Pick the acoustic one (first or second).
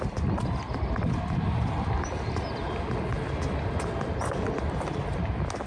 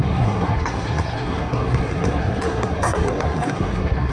first